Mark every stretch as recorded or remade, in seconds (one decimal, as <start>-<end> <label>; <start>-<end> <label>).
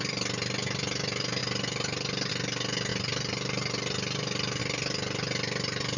0.0-6.0 recorded